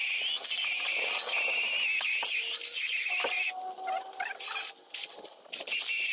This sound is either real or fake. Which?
real